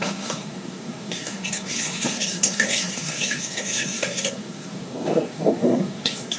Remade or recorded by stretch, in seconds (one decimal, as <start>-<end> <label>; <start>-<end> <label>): 0.0-6.4 remade